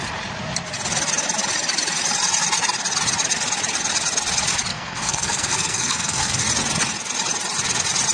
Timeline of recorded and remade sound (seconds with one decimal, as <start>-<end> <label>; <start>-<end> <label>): 0.0-4.7 recorded; 4.7-6.4 remade; 6.4-8.1 recorded